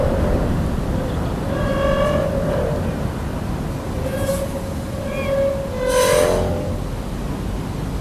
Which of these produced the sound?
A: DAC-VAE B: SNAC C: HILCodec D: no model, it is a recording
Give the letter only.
D